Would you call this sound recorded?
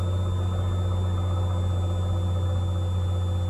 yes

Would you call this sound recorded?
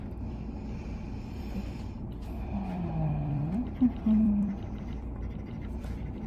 no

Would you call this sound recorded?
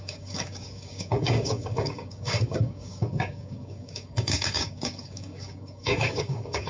no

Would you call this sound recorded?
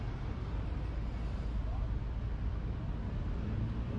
yes